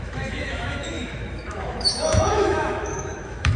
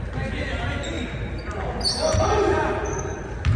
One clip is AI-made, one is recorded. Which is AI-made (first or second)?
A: first